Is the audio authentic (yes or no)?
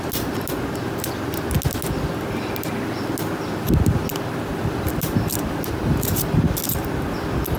yes